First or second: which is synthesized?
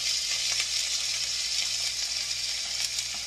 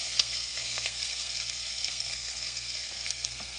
second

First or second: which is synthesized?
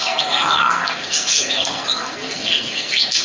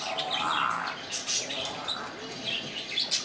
first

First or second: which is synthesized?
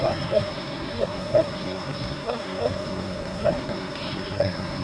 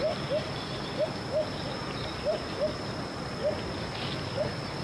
first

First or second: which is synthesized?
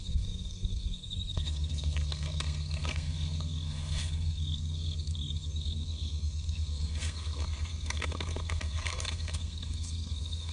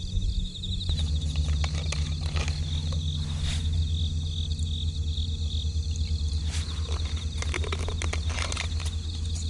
first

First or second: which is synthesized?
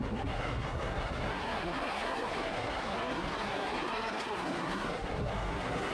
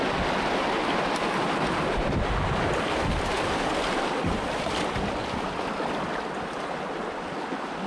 first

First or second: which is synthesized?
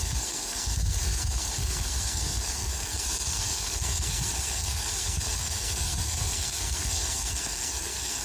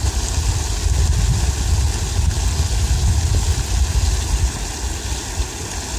first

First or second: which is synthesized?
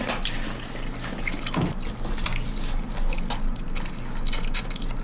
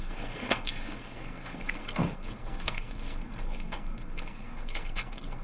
second